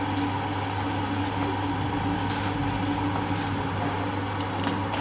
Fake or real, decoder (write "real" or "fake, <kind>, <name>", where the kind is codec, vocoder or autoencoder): real